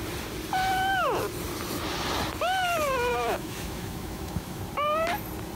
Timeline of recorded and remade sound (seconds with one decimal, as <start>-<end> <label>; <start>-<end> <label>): 0.0-3.1 recorded; 3.1-4.6 remade; 4.6-5.6 recorded